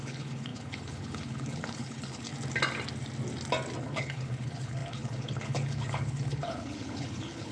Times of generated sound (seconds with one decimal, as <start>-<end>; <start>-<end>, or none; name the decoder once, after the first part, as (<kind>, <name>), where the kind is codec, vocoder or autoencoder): 0.0-2.3 (codec, HILCodec); 3.8-7.5